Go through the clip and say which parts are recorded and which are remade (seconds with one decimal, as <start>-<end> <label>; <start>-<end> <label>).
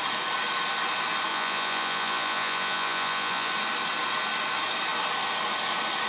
0.0-1.3 recorded; 1.3-3.5 remade; 3.5-6.1 recorded